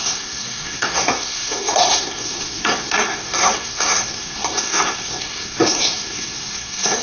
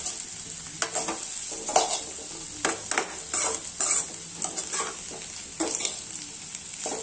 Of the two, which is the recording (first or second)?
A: second